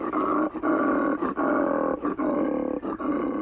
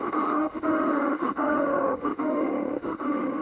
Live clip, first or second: first